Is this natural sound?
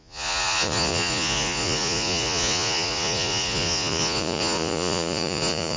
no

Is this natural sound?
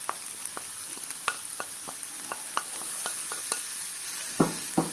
yes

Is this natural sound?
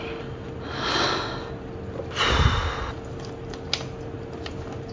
yes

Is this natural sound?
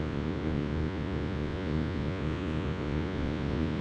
no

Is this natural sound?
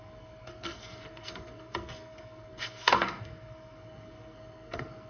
no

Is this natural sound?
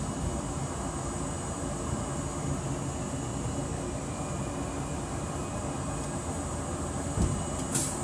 yes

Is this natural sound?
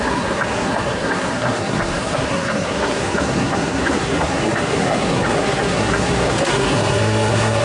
no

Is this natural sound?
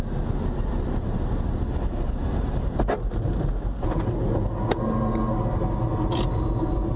yes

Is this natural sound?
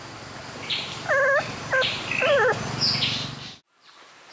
yes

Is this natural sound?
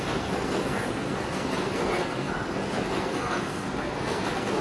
no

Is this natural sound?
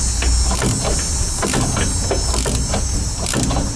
yes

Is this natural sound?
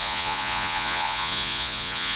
no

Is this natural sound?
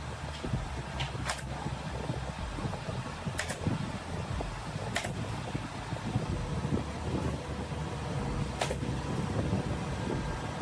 yes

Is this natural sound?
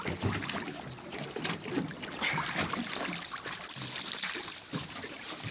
yes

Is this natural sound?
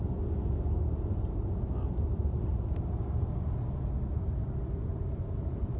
yes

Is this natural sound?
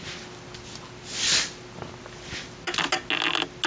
yes